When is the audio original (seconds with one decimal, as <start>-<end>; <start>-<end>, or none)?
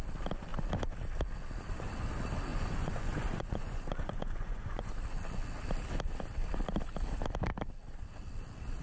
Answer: 0.0-2.5; 4.9-8.8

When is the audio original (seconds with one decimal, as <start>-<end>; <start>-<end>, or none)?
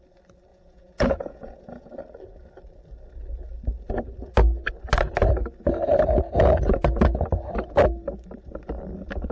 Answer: 0.0-0.5; 1.9-9.3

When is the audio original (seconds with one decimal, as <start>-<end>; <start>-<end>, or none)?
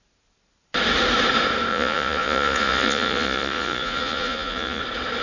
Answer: 0.0-1.7; 4.8-5.2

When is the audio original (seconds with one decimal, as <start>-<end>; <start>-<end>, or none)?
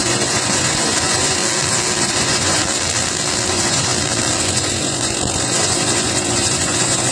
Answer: 1.4-2.0; 2.6-3.5; 3.9-4.4